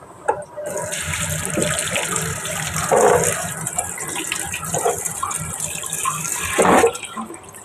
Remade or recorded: recorded